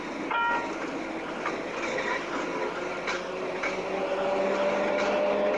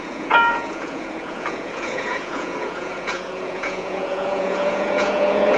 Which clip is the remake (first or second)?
second